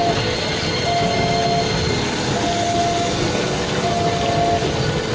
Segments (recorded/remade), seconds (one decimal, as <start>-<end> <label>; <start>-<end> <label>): 0.0-5.1 recorded